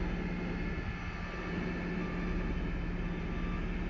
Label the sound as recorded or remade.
recorded